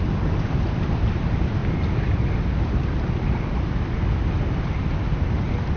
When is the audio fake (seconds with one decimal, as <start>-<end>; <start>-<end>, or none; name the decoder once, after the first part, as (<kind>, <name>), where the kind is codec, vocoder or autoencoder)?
0.0-1.6 (vocoder, BigVGAN v2); 5.1-5.8